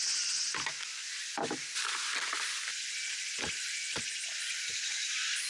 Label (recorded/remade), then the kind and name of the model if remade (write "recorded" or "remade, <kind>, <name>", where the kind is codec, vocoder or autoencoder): recorded